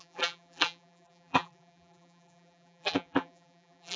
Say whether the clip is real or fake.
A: fake